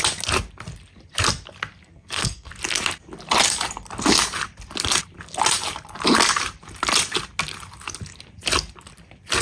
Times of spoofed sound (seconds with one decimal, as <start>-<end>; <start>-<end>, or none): 1.9-2.5

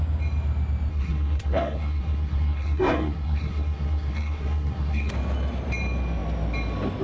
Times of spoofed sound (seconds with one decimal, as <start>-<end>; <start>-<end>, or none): 0.9-5.1

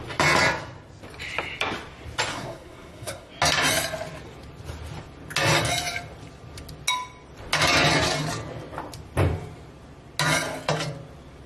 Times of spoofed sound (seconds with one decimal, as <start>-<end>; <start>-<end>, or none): 2.3-3.3

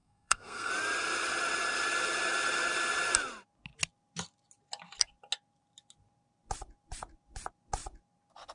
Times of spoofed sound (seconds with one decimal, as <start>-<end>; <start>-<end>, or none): 0.0-0.7

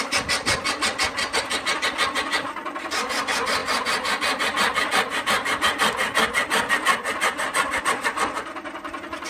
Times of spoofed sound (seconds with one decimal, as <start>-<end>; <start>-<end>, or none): none

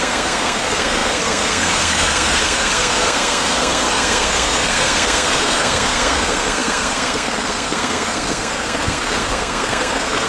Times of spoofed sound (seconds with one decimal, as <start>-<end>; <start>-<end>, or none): 0.0-10.3